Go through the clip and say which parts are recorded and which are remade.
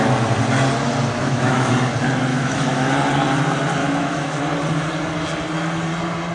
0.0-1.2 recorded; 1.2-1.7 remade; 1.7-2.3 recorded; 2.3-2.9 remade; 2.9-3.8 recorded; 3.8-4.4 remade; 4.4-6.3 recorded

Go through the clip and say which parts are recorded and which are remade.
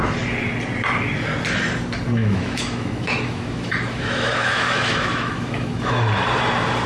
0.0-2.2 recorded; 2.2-5.9 remade; 5.9-6.9 recorded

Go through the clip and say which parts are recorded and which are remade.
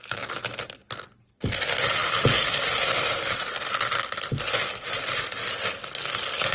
0.0-6.5 recorded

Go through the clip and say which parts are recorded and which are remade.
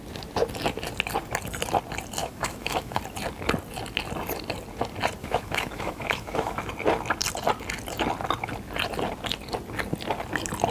0.0-2.2 recorded; 2.2-3.0 remade; 3.0-5.2 recorded; 5.2-6.7 remade; 6.7-10.7 recorded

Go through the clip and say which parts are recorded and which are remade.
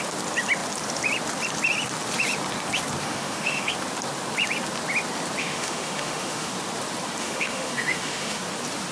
0.0-3.0 recorded; 3.0-3.7 remade; 3.7-5.4 recorded; 5.4-6.5 remade; 6.5-7.2 recorded; 7.2-8.4 remade; 8.4-8.9 recorded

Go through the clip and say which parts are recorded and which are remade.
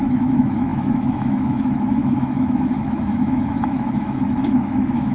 0.0-5.1 remade